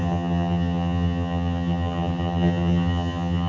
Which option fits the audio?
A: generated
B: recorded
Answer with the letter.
A